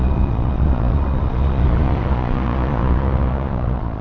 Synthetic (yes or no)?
yes